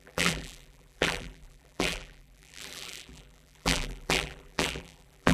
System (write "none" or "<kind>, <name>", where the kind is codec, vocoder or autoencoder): vocoder, BigVGAN v2